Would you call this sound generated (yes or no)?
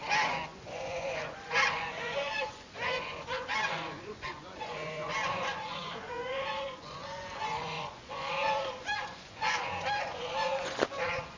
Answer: yes